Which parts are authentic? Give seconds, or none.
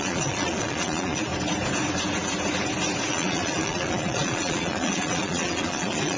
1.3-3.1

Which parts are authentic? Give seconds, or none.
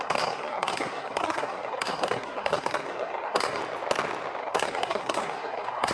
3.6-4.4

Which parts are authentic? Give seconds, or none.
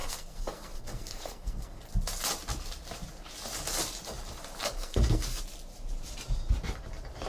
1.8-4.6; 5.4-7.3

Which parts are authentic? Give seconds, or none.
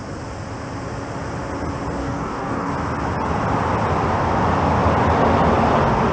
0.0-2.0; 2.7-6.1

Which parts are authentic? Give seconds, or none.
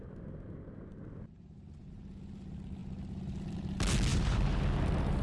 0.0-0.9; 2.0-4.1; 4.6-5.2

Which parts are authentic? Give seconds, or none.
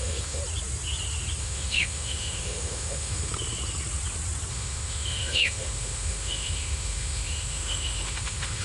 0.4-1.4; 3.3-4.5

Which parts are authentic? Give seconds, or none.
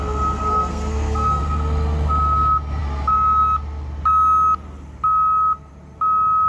0.0-0.5; 1.4-6.5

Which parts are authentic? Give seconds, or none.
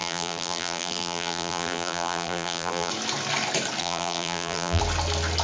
2.9-3.8; 4.8-5.4